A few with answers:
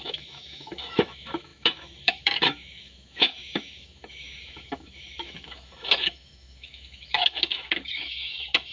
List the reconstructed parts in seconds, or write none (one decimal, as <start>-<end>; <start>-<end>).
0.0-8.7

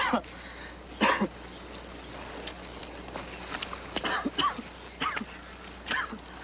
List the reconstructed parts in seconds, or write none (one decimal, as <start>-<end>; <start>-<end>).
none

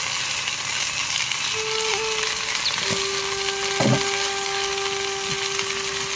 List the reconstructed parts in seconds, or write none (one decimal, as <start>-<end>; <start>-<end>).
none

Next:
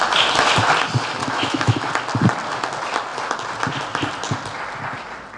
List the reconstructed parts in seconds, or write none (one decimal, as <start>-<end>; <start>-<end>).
1.2-1.9

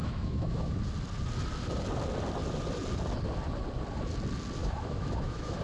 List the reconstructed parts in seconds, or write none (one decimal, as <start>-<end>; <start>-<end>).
0.0-0.8; 4.6-5.6